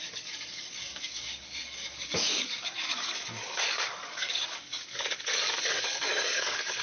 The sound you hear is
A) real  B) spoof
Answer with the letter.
B